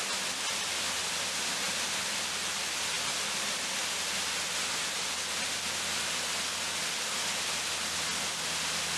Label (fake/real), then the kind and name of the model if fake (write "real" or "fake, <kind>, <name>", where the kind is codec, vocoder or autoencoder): real